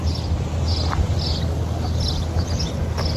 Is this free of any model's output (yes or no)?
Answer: yes